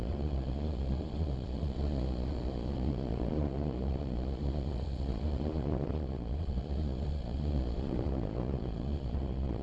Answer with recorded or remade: remade